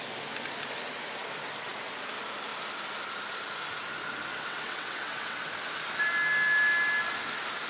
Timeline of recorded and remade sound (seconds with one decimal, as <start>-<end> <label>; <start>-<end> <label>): 0.0-4.3 recorded; 4.3-5.5 remade; 5.5-7.7 recorded